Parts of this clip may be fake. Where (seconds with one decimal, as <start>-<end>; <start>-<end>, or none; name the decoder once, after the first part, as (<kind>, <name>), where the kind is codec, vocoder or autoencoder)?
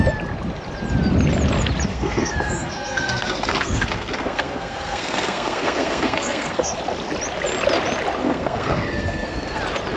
1.9-6.8 (codec, SNAC); 8.2-9.6